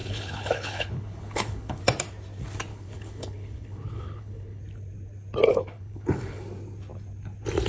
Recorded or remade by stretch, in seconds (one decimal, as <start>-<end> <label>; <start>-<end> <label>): 0.0-1.8 remade; 1.8-2.7 recorded; 2.7-4.6 remade; 4.6-5.5 recorded; 5.5-6.4 remade; 6.4-7.7 recorded